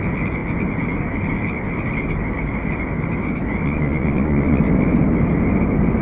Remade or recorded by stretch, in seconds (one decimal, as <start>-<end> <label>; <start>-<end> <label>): 0.0-3.6 recorded; 3.6-4.6 remade; 4.6-6.0 recorded